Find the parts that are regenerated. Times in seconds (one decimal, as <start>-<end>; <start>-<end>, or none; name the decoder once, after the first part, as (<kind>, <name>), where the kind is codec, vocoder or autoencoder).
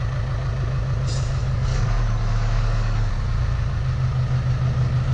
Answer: 1.4-3.1 (codec, DAC)